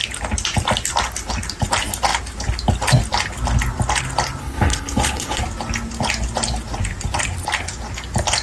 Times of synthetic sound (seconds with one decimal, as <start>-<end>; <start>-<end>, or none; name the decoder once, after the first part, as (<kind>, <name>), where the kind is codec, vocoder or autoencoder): 4.4-5.4 (codec, HILCodec)